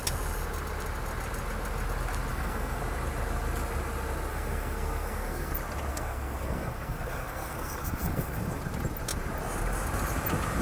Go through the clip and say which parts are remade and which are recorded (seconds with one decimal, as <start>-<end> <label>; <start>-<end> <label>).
0.0-2.3 recorded; 2.3-2.8 remade; 2.8-4.3 recorded; 4.3-5.5 remade; 5.5-5.9 recorded; 5.9-8.6 remade; 8.6-10.6 recorded